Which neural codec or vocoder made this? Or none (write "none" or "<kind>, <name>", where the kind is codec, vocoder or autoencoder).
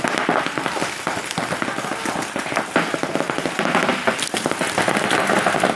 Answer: none